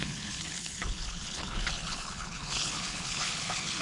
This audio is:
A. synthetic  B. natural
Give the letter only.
A